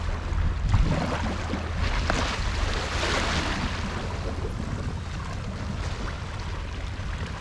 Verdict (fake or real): real